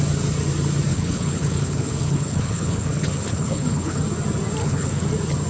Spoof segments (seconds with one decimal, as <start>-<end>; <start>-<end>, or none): 0.9-4.0; 4.6-5.1